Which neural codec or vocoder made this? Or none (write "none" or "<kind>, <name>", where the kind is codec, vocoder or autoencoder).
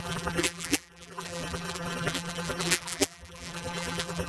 vocoder, BigVGAN v2